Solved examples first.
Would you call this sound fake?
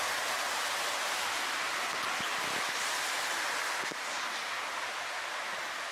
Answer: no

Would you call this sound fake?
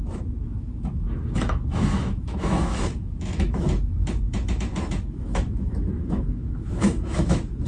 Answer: yes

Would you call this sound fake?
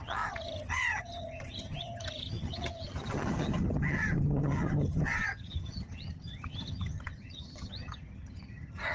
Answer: yes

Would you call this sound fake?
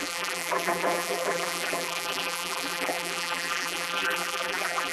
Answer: yes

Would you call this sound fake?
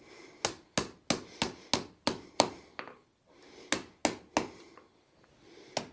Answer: no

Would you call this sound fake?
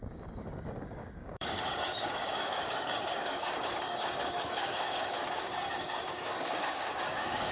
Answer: yes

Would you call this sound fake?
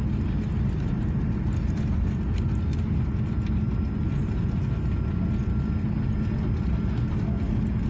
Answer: no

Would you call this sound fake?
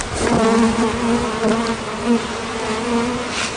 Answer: no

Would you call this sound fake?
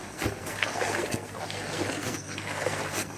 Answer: yes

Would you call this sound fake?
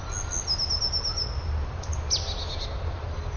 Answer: no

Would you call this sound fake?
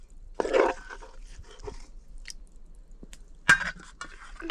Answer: no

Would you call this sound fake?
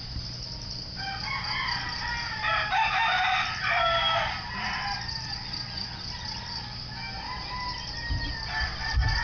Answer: no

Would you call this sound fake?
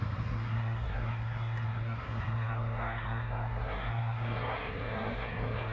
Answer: yes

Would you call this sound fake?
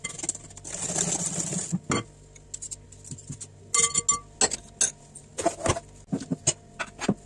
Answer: no